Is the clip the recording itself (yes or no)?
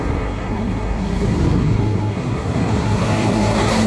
no